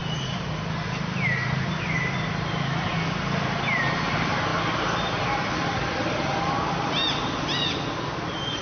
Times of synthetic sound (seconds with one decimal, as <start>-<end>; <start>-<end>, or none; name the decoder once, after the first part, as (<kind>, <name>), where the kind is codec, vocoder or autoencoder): none